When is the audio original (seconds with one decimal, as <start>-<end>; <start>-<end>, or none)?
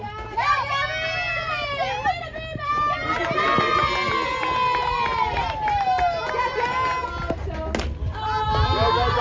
0.0-9.2